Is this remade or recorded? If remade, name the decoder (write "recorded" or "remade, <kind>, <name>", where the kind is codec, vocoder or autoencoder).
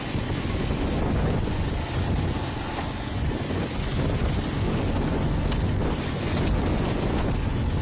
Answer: remade, vocoder, Vocos